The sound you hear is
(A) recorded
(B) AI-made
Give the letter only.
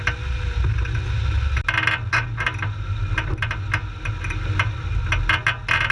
A